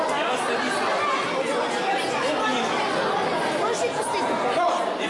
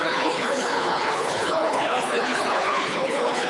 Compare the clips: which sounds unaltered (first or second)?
first